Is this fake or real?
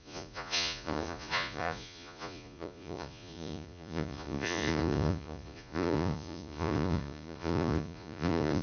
fake